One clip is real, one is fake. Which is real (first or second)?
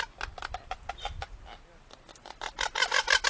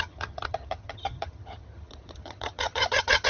first